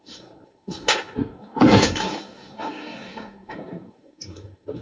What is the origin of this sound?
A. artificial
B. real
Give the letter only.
A